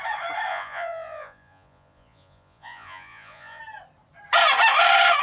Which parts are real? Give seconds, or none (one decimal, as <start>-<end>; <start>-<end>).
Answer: 0.0-0.5; 3.6-5.2